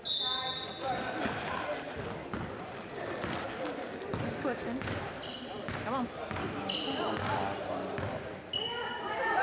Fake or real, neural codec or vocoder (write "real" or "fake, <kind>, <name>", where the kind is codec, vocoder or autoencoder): real